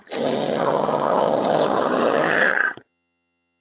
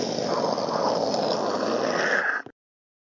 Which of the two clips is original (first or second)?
second